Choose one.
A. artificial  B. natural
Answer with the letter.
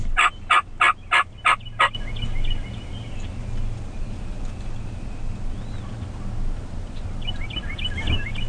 B